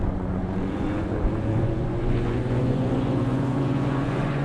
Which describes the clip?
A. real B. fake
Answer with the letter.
B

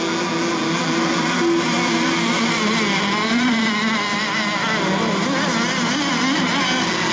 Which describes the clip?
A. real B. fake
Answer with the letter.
A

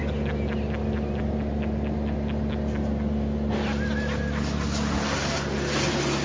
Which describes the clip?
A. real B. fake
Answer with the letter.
A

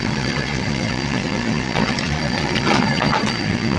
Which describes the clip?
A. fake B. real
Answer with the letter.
A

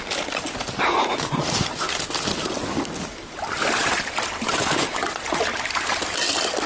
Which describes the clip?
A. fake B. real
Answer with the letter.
B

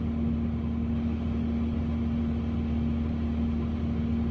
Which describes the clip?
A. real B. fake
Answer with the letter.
A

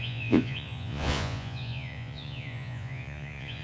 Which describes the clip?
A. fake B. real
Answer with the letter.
A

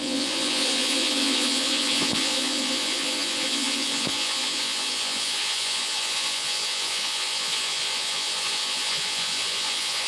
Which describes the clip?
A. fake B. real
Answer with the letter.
A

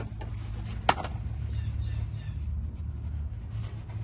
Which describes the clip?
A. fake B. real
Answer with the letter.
B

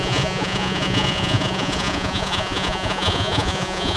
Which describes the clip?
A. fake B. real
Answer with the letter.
A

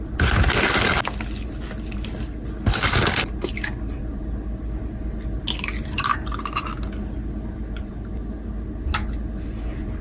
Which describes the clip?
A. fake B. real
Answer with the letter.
B